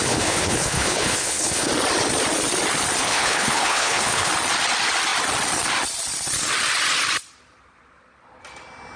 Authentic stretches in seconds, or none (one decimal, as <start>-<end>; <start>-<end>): 1.7-3.0; 4.3-9.0